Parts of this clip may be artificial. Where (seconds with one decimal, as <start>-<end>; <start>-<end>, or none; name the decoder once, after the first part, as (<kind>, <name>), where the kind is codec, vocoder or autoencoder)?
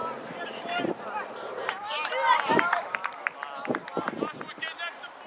0.0-3.2 (vocoder, BigVGAN v2)